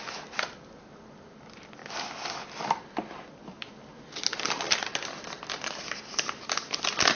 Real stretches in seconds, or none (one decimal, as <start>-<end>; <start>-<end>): 0.0-7.2